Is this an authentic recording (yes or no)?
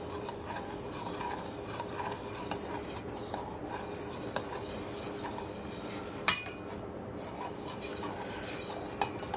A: yes